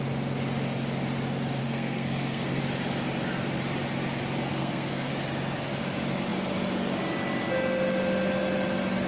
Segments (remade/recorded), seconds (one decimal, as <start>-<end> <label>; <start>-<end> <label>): 0.0-1.6 recorded; 1.6-2.6 remade; 2.6-4.6 recorded; 4.6-5.1 remade; 5.1-9.1 recorded